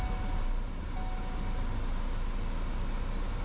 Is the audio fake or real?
real